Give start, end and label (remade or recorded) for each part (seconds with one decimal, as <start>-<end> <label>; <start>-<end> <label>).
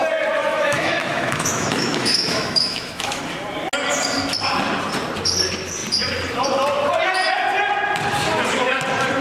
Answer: 0.0-0.5 recorded; 0.5-3.2 remade; 3.2-9.2 recorded